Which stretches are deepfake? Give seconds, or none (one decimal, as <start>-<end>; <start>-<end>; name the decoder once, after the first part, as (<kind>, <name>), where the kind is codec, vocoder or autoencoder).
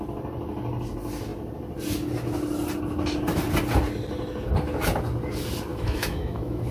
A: 5.7-6.7 (autoencoder, DAC-VAE)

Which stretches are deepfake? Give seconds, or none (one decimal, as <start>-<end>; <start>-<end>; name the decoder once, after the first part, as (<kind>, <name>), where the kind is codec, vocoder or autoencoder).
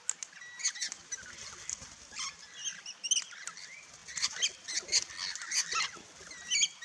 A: none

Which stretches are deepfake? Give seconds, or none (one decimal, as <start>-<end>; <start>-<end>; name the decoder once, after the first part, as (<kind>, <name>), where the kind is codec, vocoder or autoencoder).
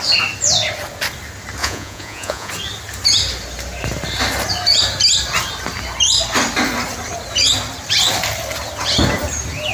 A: 1.6-2.5 (vocoder, Vocos)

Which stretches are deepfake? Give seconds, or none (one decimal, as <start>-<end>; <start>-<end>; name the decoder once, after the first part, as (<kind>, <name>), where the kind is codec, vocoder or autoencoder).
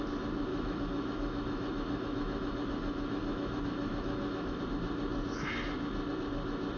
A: 0.5-4.6 (autoencoder, DAC-VAE)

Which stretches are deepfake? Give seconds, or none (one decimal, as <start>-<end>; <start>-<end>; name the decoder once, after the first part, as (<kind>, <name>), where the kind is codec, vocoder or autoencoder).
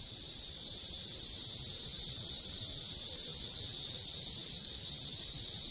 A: none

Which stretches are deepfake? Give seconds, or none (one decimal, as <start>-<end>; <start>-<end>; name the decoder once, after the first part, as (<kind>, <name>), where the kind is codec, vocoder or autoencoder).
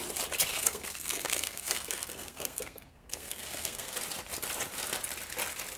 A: 0.5-3.9 (codec, SNAC)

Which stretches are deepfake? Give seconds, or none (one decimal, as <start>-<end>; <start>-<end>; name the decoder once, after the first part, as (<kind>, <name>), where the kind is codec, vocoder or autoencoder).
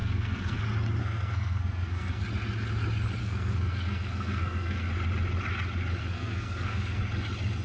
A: 0.0-0.6 (codec, SNAC); 1.0-2.2; 3.2-4.9; 6.0-7.0